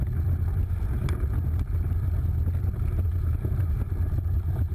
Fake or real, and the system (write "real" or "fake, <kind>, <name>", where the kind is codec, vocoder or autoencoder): real